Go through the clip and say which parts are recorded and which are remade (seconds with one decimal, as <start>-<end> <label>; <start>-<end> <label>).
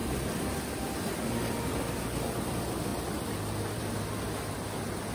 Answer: 0.0-1.6 remade; 1.6-2.9 recorded; 2.9-3.8 remade; 3.8-5.1 recorded